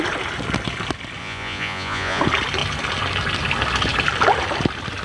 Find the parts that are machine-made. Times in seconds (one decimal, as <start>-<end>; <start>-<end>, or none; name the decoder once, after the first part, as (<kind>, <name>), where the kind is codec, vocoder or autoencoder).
1.2-2.2 (vocoder, Vocos)